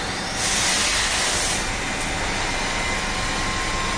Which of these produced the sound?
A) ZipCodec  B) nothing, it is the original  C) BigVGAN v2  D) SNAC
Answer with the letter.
B